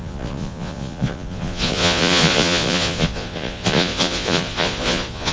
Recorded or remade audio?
remade